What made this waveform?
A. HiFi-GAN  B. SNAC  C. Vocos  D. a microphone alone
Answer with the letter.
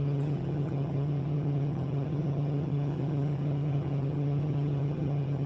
A